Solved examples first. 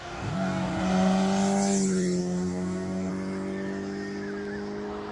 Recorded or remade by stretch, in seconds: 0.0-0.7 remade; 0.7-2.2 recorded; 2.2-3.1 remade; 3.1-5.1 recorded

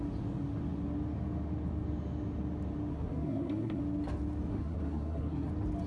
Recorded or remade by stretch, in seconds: 0.0-2.9 recorded; 2.9-3.8 remade; 3.8-4.5 recorded; 4.5-5.5 remade; 5.5-5.9 recorded

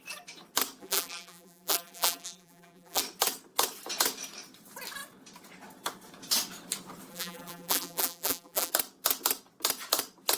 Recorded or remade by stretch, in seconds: 0.0-0.8 recorded; 0.8-3.0 remade; 3.0-7.1 recorded; 7.1-8.7 remade; 8.7-10.4 recorded